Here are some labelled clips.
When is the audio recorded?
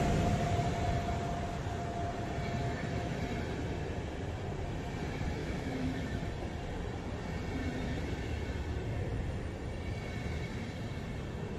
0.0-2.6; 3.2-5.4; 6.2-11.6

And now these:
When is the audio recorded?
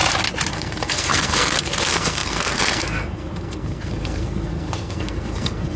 0.0-0.5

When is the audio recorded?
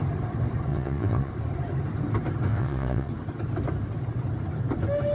0.0-0.7; 1.3-2.5; 3.1-5.1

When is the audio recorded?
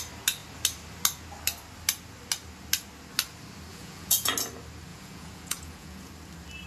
0.0-3.7; 4.3-4.9; 6.1-6.7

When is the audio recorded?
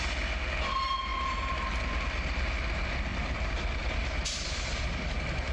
0.0-5.5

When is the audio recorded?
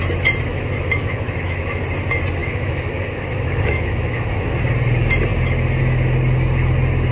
0.0-0.5; 1.8-2.4; 4.5-7.1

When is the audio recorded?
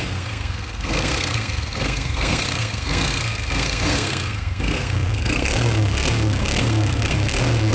none